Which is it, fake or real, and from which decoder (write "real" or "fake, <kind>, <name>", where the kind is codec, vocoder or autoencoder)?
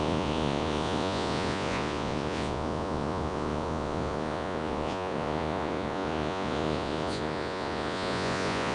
fake, vocoder, Vocos